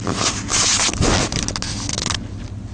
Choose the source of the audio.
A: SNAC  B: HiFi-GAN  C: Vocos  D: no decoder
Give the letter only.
D